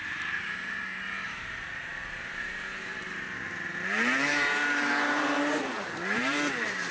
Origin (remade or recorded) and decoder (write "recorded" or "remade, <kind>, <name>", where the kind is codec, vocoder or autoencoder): remade, vocoder, BigVGAN v2